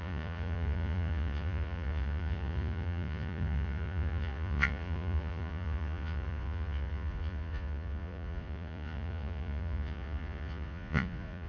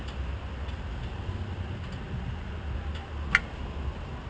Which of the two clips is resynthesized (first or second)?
first